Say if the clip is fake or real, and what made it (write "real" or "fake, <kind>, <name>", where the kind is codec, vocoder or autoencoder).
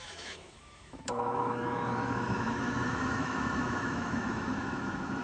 fake, autoencoder, DAC-VAE